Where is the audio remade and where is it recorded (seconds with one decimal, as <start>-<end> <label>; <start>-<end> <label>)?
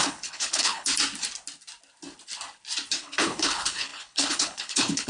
0.0-0.9 remade; 0.9-2.9 recorded; 2.9-5.1 remade